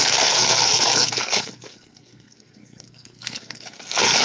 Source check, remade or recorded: remade